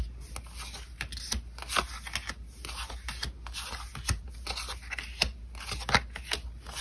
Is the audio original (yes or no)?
yes